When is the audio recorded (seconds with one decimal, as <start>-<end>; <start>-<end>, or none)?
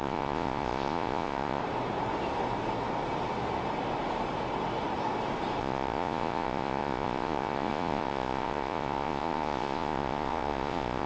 1.6-5.6